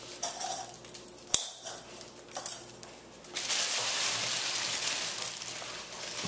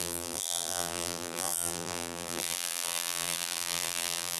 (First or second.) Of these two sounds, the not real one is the second